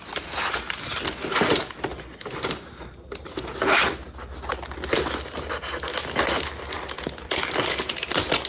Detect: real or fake real